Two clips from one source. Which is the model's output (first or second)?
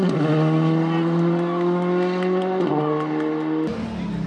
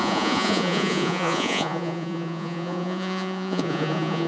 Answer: second